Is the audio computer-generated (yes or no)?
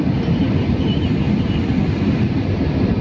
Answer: yes